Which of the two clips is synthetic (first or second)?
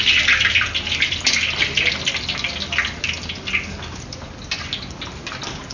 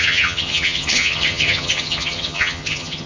second